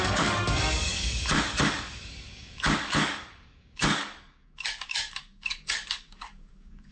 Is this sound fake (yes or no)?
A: yes